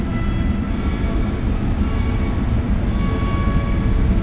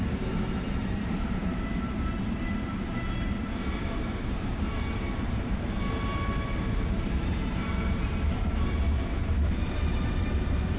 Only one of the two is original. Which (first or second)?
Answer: first